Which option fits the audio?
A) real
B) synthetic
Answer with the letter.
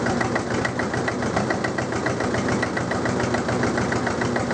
A